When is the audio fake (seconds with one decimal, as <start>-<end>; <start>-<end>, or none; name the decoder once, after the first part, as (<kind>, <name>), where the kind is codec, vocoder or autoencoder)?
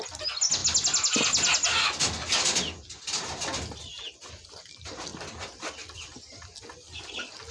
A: none